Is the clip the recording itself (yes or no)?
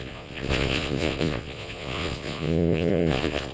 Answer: no